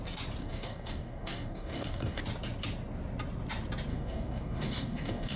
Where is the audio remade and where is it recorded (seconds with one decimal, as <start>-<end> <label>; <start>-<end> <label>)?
0.0-0.4 recorded; 0.4-2.2 remade; 2.2-3.9 recorded; 3.9-5.4 remade